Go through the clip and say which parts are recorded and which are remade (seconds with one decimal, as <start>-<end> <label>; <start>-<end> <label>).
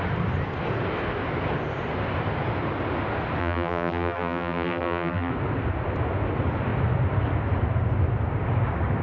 0.0-3.4 recorded; 3.4-5.3 remade; 5.3-9.0 recorded